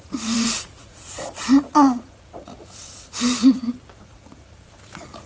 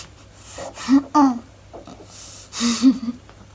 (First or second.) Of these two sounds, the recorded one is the second